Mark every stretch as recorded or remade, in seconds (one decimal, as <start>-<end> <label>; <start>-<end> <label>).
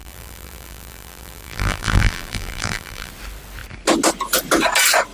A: 0.0-3.1 remade; 3.1-5.1 recorded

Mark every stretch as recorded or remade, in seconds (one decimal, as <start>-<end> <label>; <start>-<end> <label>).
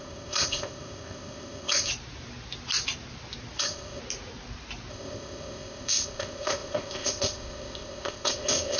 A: 0.0-1.9 remade; 1.9-3.6 recorded; 3.6-4.0 remade; 4.0-4.9 recorded; 4.9-8.8 remade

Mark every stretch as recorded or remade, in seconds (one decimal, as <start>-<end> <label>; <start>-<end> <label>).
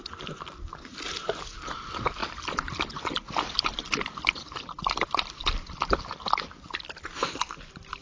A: 0.0-8.0 recorded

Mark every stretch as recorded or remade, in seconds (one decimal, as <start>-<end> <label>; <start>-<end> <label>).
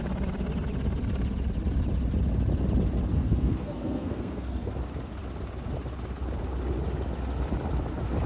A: 0.0-3.1 recorded; 3.1-4.7 remade; 4.7-8.3 recorded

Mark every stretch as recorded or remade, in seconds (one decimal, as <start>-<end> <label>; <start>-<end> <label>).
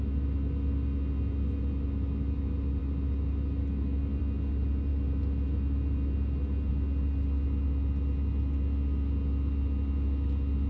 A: 0.0-2.8 recorded; 2.8-4.2 remade; 4.2-10.7 recorded